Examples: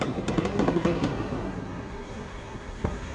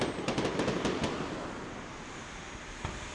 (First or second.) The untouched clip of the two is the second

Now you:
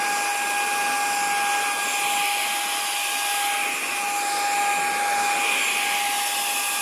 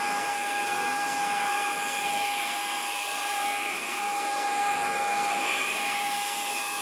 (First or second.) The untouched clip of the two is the first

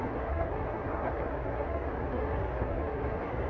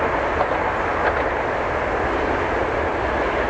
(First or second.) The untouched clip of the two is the second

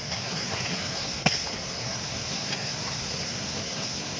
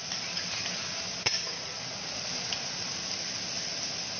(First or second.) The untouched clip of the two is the second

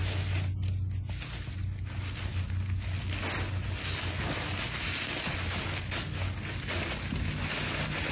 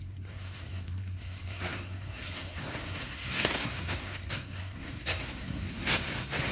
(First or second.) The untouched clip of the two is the first